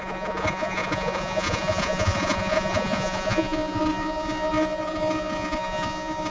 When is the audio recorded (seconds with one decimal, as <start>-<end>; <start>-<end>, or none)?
none